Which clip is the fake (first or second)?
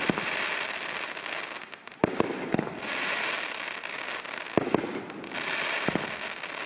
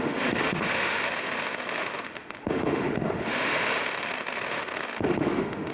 second